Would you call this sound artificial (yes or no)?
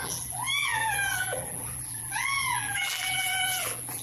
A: yes